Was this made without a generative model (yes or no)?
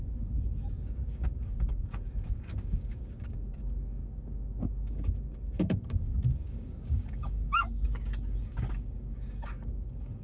no